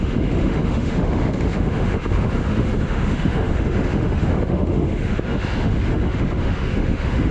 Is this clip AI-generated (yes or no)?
yes